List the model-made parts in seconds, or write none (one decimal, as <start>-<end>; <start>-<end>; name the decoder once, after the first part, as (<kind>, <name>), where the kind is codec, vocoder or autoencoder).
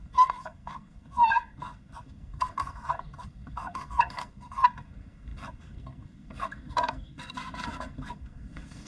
0.0-8.9 (codec, SNAC)